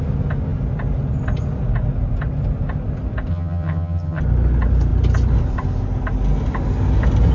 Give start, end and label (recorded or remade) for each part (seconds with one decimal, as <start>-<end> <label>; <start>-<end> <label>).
0.0-3.3 recorded; 3.3-4.2 remade; 4.2-7.3 recorded